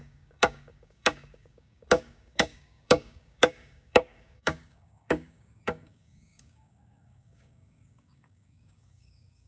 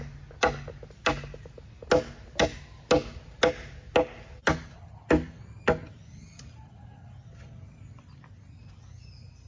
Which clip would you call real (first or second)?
second